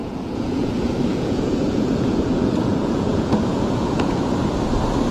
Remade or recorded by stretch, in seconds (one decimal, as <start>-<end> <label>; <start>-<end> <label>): 0.0-0.7 remade; 0.7-1.1 recorded; 1.1-4.2 remade; 4.2-5.1 recorded